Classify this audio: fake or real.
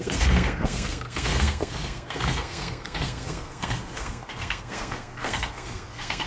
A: fake